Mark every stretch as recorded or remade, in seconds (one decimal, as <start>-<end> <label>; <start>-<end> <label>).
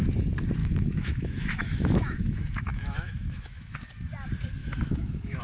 0.0-0.6 recorded; 0.6-3.8 remade; 3.8-4.6 recorded; 4.6-5.4 remade